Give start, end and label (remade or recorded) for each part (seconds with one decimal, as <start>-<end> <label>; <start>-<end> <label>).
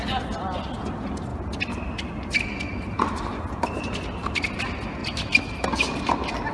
0.0-6.5 recorded